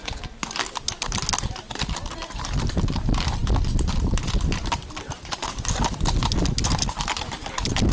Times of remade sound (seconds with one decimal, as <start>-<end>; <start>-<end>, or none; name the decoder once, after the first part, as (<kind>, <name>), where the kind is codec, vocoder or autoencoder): none